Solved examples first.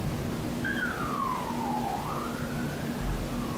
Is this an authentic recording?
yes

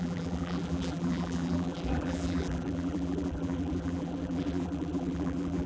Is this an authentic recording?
no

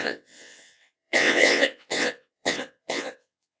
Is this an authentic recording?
no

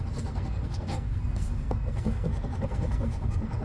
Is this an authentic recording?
no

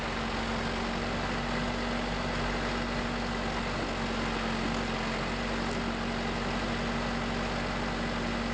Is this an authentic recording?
yes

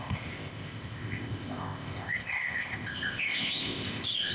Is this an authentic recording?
no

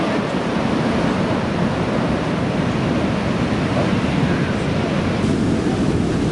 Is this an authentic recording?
yes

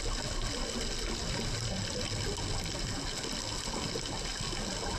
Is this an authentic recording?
yes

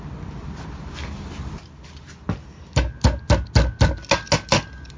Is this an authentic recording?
yes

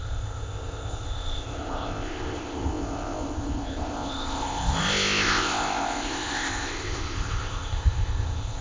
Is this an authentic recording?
no